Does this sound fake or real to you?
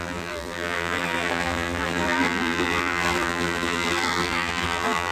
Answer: fake